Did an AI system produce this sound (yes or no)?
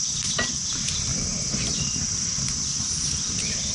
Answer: no